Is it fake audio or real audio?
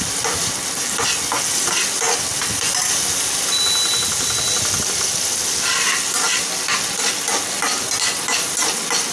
real